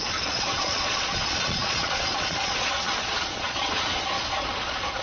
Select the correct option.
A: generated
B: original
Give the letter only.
A